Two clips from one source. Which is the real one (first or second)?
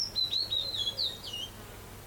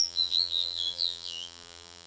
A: first